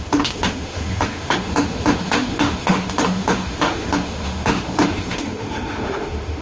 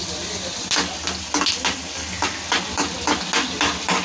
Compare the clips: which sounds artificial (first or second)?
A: first